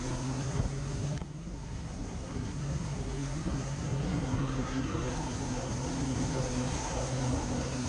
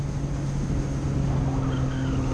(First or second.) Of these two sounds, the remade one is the first